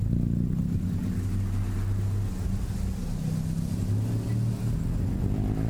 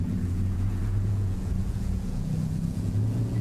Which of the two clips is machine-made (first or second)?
second